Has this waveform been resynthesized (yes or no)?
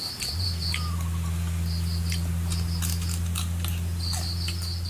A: no